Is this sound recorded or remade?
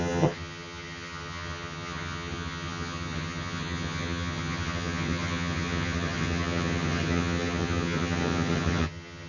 remade